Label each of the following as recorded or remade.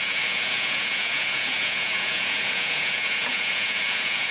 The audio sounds remade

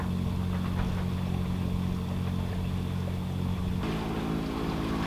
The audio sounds recorded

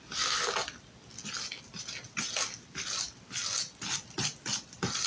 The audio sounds recorded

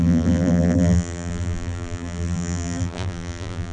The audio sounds remade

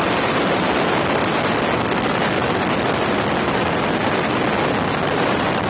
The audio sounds recorded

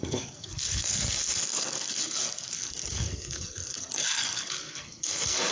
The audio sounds remade